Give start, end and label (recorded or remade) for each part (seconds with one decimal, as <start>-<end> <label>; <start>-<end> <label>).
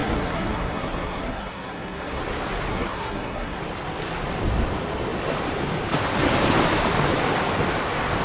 0.0-2.2 remade; 2.2-2.7 recorded; 2.7-3.6 remade; 3.6-8.2 recorded